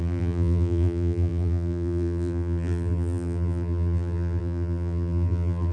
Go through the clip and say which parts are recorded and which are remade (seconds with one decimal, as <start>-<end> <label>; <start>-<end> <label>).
0.0-5.7 remade